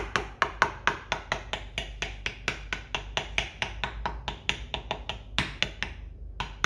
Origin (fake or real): real